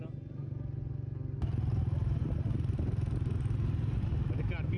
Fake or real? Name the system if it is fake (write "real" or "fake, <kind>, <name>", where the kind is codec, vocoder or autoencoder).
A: real